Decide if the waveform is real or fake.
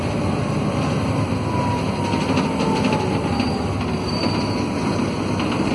real